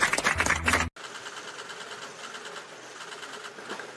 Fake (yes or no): no